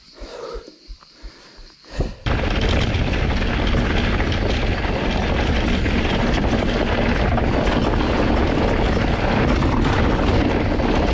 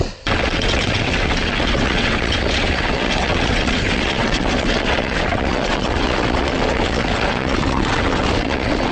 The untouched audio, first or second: first